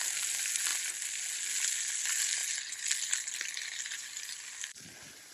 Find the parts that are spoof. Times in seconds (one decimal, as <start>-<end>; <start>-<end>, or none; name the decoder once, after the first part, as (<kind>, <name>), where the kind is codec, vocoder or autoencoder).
none